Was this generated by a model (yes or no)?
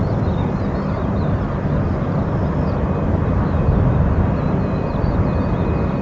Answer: no